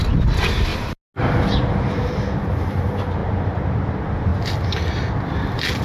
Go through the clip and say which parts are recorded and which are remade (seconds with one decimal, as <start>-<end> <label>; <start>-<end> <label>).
0.0-5.8 recorded